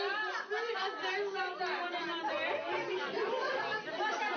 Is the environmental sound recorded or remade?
recorded